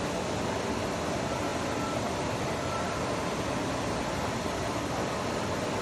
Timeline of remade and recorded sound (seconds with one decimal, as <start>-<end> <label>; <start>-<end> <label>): 0.0-5.8 recorded